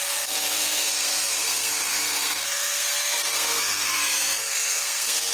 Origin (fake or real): fake